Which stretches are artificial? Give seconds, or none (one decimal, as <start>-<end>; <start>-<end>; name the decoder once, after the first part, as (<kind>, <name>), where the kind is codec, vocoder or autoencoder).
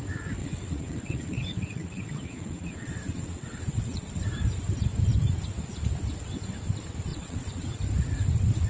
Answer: 0.4-4.2 (vocoder, WaveNeXt); 7.1-7.8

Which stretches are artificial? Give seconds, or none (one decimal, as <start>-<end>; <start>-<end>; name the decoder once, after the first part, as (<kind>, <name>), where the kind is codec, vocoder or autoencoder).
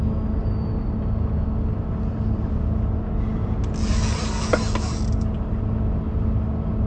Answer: none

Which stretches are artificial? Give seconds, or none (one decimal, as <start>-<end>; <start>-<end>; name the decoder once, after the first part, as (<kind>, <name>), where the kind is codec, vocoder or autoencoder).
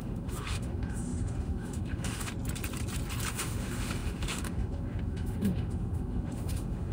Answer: 0.0-2.3 (autoencoder, DAC-VAE); 3.3-6.9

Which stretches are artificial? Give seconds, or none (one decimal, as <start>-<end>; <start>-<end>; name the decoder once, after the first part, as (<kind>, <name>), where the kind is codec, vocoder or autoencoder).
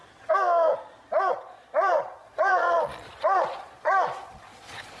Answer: 1.3-5.0 (vocoder, Vocos)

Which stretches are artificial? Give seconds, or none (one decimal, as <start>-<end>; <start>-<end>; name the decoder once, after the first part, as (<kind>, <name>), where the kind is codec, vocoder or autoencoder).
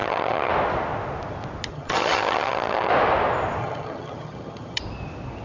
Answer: 0.0-0.5 (vocoder, HiFi-GAN); 1.7-2.9; 3.6-4.8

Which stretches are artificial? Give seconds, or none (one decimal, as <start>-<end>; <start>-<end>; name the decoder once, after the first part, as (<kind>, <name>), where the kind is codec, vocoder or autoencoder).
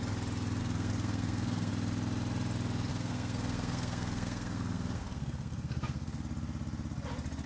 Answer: 0.6-1.7 (codec, SNAC); 2.9-6.2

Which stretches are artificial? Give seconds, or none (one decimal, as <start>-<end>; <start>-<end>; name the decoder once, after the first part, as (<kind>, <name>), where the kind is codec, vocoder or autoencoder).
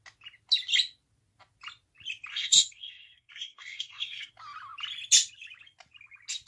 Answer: 2.3-4.3 (codec, SNAC)